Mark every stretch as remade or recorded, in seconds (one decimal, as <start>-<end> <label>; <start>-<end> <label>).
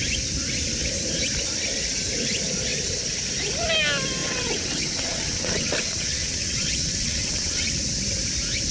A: 0.0-4.2 recorded; 4.2-7.8 remade; 7.8-8.7 recorded